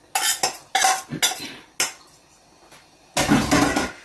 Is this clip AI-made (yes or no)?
no